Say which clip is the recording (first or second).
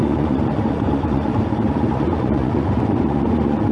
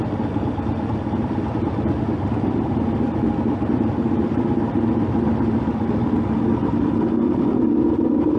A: second